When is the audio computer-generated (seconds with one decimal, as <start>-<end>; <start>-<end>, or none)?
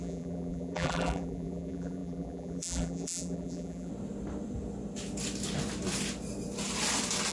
0.0-3.9